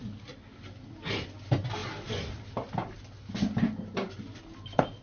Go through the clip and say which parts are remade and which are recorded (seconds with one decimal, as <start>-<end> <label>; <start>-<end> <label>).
0.0-5.0 recorded